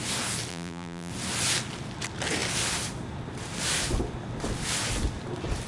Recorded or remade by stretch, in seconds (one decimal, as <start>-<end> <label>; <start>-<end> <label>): 0.0-0.5 recorded; 0.5-1.1 remade; 1.1-5.7 recorded